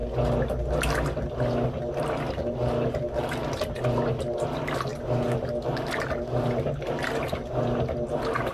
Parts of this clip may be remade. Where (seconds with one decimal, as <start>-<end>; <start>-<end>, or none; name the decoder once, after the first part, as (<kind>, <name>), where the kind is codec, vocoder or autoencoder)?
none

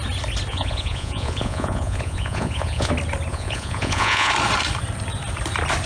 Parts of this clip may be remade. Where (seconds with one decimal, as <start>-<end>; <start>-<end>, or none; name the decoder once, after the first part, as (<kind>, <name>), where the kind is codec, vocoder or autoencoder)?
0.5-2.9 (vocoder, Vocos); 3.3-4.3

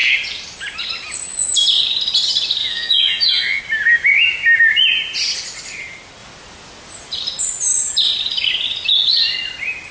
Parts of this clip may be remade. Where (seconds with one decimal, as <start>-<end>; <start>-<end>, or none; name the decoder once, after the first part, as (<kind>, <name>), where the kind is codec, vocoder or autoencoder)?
2.6-3.6 (vocoder, Vocos)

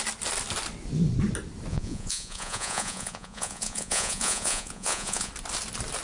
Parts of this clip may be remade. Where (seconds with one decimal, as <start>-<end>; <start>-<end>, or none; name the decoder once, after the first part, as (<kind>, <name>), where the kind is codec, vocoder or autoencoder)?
1.7-5.3 (vocoder, Vocos)

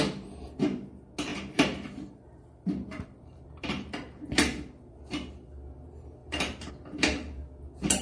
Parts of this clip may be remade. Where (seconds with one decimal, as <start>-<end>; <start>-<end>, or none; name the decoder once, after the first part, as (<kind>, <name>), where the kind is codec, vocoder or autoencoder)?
1.3-5.0 (vocoder, BigVGAN v2); 6.2-6.7

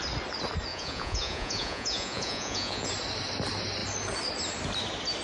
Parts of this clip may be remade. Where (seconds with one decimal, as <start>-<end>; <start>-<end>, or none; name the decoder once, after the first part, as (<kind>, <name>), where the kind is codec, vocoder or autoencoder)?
0.7-2.9 (vocoder, Vocos)